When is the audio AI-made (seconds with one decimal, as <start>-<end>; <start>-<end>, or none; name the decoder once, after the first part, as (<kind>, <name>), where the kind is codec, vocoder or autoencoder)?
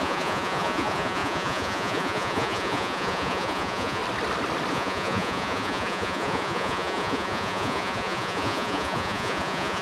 0.0-4.0 (vocoder, Vocos); 4.7-9.8